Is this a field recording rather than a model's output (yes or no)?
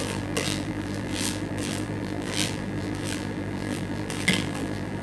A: no